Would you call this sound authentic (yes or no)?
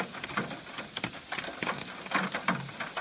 yes